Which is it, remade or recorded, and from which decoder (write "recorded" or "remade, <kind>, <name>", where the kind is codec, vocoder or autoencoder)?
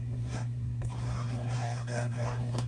remade, codec, SNAC